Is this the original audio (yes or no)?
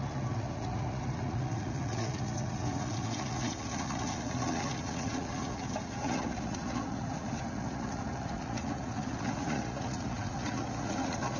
no